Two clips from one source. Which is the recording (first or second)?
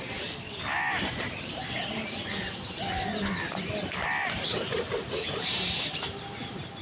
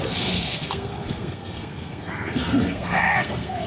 first